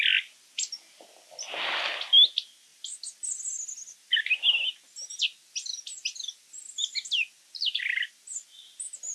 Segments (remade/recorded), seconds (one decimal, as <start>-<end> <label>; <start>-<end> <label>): 0.0-9.1 recorded